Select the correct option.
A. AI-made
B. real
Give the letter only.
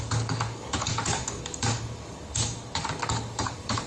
A